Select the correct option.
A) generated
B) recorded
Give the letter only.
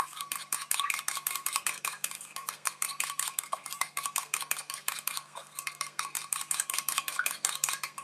A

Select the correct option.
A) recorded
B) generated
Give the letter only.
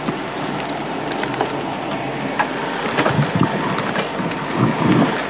A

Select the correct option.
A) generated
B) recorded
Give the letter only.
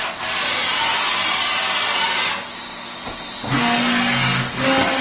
B